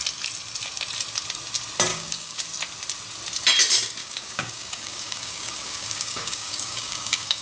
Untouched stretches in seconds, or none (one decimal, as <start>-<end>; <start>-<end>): 0.0-1.9; 2.4-4.0